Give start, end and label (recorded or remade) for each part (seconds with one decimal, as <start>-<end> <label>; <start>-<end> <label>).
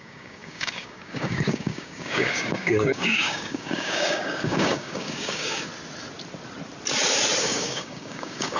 0.0-5.7 remade; 5.7-7.4 recorded; 7.4-8.6 remade